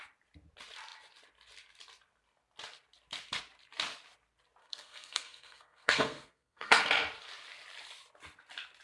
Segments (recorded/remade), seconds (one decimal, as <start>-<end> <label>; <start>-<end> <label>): 0.0-4.6 recorded; 4.6-6.8 remade; 6.8-8.8 recorded